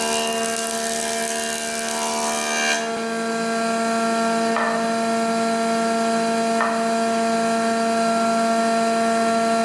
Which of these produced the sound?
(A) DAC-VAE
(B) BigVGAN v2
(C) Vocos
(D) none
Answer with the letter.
D